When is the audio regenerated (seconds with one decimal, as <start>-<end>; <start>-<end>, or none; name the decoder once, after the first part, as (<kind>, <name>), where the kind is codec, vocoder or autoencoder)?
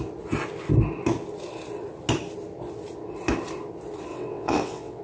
4.1-5.0 (vocoder, WaveNeXt)